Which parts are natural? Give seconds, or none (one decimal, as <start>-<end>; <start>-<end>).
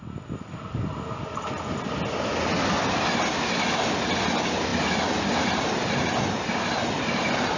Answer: 0.0-7.6